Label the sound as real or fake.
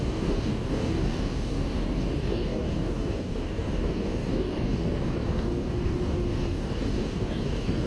fake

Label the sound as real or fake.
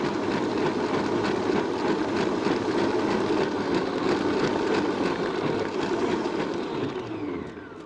real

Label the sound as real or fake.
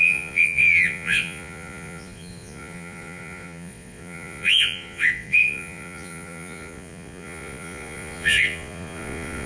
fake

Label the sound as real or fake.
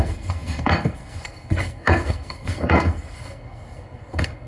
fake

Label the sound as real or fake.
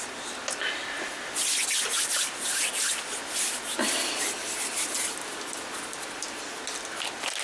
real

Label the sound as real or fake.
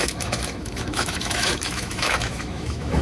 fake